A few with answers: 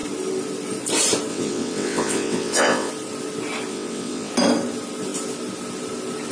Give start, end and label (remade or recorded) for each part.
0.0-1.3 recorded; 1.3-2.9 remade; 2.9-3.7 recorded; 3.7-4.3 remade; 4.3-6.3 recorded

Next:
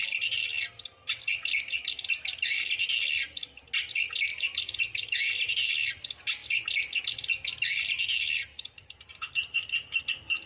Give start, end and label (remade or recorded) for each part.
0.0-4.3 recorded; 4.3-5.5 remade; 5.5-8.5 recorded; 8.5-10.0 remade; 10.0-10.5 recorded

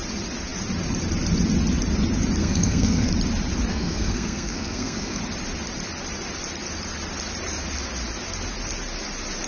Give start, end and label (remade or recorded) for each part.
0.0-2.4 recorded; 2.4-3.1 remade; 3.1-3.7 recorded; 3.7-5.2 remade; 5.2-9.5 recorded

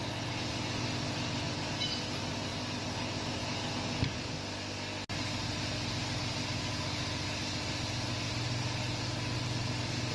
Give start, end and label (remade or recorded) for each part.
0.0-10.1 recorded